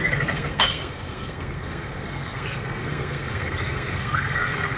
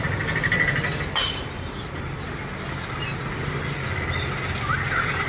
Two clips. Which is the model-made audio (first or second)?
first